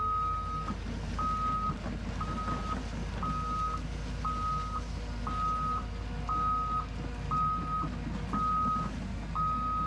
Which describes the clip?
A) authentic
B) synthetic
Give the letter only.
A